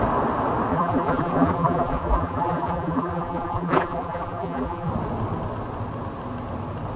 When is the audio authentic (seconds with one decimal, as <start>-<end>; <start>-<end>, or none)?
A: 0.0-0.7; 4.9-7.0